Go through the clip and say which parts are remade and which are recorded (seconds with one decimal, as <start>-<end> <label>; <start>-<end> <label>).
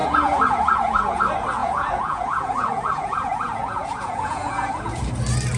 0.0-1.2 remade; 1.2-1.6 recorded; 1.6-5.0 remade; 5.0-5.6 recorded